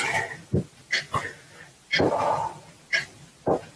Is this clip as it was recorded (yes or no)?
yes